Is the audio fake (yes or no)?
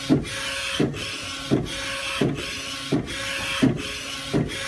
no